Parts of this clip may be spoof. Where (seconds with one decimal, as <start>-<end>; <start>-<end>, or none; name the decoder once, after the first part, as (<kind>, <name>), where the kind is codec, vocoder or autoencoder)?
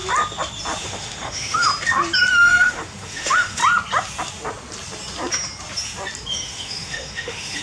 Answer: 0.8-1.7 (autoencoder, DAC-VAE); 2.3-3.6; 6.3-7.6